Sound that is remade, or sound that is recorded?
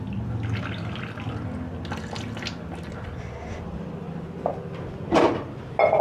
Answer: recorded